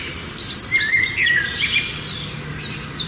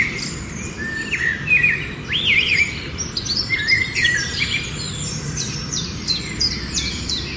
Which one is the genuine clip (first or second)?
first